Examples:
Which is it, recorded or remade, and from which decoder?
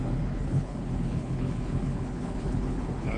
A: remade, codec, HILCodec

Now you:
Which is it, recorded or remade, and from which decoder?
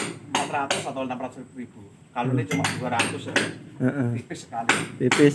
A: recorded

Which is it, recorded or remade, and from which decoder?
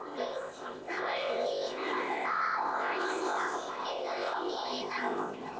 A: remade, codec, ZipCodec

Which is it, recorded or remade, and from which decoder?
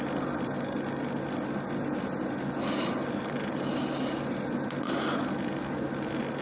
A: recorded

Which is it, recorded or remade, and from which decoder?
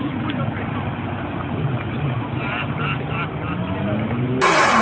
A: recorded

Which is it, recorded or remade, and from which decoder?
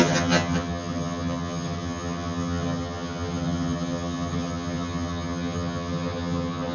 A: remade, vocoder, HiFi-GAN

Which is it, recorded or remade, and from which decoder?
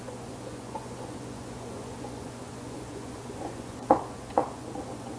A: remade, vocoder, Vocos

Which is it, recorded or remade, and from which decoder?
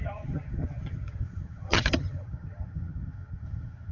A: remade, vocoder, HiFi-GAN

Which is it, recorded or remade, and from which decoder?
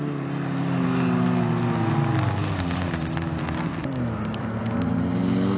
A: recorded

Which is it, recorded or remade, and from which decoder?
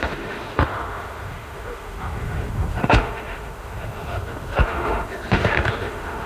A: remade, autoencoder, DAC-VAE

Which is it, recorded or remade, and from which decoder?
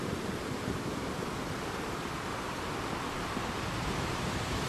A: remade, vocoder, BigVGAN v2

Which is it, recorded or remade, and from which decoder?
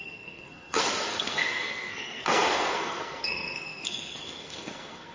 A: remade, codec, SNAC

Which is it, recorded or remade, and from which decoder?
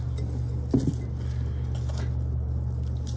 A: recorded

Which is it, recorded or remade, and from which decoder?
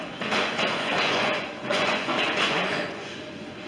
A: remade, vocoder, Vocos